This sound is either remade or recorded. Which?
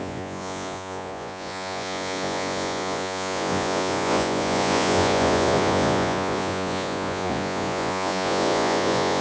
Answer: remade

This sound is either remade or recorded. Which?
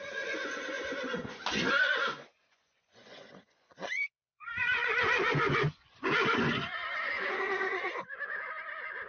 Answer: remade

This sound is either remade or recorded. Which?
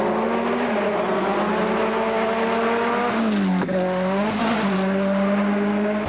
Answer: recorded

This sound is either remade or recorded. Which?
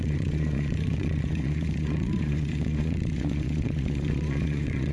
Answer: remade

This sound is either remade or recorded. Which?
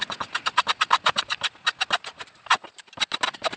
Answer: recorded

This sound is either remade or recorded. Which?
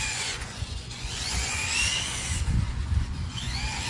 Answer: remade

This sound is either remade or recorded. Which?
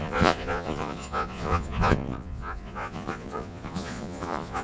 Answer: remade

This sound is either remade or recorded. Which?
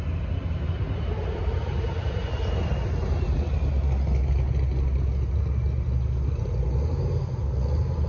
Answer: recorded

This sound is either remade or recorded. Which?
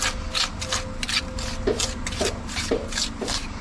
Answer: recorded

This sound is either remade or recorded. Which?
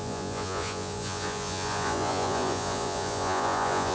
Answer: remade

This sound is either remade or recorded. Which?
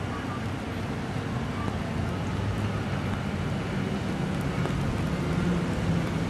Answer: recorded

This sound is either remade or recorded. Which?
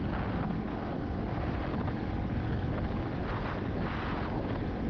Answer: recorded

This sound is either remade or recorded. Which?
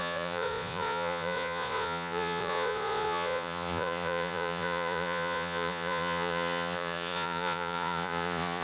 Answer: remade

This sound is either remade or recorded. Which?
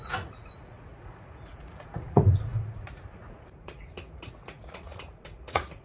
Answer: remade